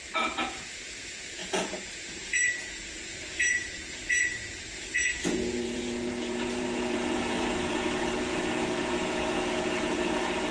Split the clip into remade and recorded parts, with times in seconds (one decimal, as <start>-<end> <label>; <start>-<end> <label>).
0.0-10.5 remade